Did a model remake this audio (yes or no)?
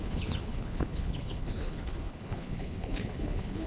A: yes